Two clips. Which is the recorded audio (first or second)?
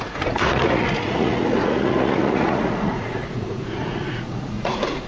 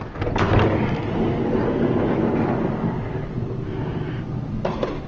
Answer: second